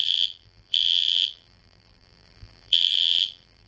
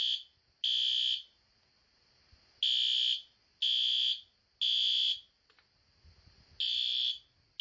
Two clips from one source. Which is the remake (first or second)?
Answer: first